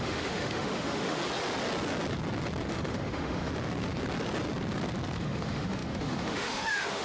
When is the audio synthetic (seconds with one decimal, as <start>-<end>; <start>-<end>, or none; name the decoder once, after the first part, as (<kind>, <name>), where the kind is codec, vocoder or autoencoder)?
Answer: 0.0-1.2 (autoencoder, DAC-VAE); 2.7-3.5; 5.2-7.0

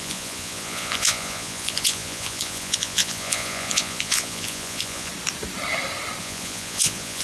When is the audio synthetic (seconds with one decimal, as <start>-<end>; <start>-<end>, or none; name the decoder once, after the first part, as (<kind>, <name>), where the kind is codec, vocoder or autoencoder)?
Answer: 0.0-5.1 (vocoder, Vocos); 6.2-7.2

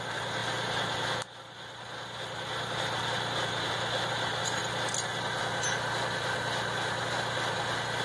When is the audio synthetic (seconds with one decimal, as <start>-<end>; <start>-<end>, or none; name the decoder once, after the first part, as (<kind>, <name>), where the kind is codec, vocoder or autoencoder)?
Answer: none